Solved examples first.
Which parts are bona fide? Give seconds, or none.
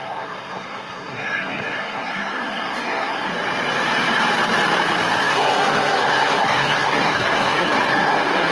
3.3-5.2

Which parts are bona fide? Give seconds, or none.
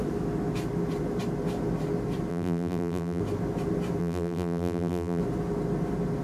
0.0-2.3; 3.2-4.0; 5.2-6.2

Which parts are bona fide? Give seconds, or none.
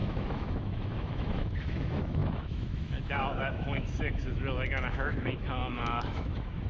none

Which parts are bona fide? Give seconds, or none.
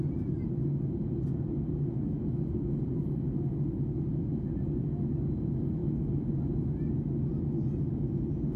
0.0-8.6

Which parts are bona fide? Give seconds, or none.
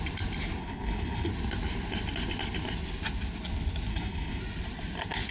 0.0-0.6; 1.3-3.9; 4.4-5.3